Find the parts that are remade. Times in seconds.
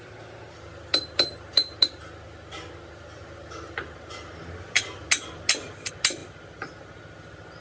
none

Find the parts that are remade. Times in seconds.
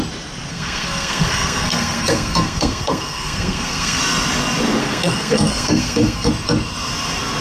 0.5-4.0 (codec, SNAC); 4.8-6.3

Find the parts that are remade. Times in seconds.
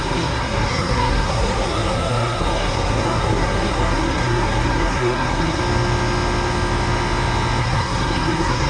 0.0-5.6 (codec, SNAC); 7.6-8.7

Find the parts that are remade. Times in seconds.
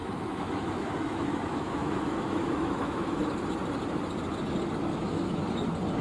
0.0-3.2 (autoencoder, DAC-VAE); 4.9-5.4